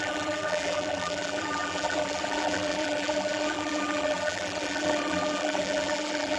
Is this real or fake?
fake